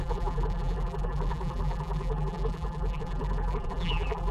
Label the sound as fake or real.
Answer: fake